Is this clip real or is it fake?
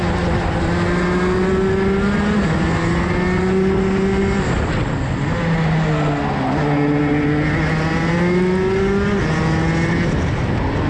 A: real